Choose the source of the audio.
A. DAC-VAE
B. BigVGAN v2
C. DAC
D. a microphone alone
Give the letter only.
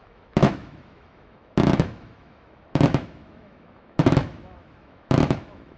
A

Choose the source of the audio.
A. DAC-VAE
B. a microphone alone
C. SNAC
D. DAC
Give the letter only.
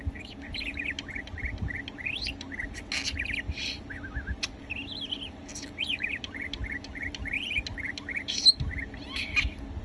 B